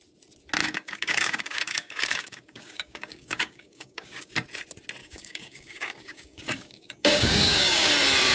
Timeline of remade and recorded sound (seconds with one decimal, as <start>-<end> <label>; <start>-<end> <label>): 0.0-0.6 recorded; 0.6-4.3 remade; 4.3-5.0 recorded; 5.0-7.9 remade; 7.9-8.3 recorded